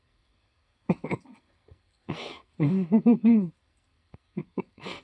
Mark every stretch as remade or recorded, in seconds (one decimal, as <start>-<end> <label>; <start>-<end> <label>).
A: 0.0-5.0 remade